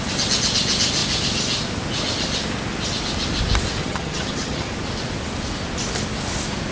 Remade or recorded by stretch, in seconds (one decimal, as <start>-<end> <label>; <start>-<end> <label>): 0.0-3.8 recorded; 3.8-4.7 remade; 4.7-6.7 recorded